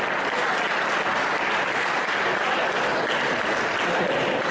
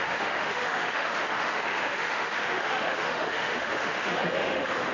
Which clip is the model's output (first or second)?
second